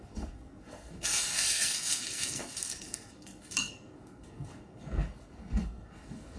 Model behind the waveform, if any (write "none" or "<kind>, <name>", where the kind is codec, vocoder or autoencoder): codec, SNAC